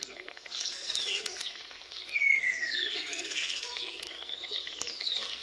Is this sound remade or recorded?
remade